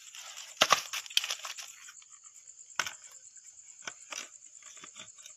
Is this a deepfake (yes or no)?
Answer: no